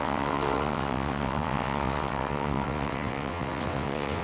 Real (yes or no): no